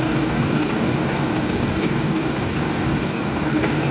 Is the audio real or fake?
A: fake